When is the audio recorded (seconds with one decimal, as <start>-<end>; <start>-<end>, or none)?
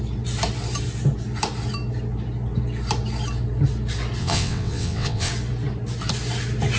0.0-4.2; 5.3-6.8